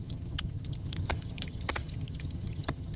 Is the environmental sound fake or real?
fake